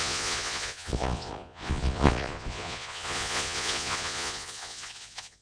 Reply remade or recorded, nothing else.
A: remade